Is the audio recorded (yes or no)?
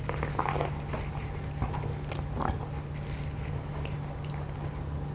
yes